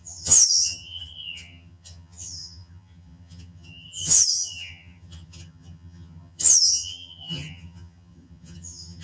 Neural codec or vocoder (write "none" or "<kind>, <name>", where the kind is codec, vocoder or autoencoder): vocoder, HiFi-GAN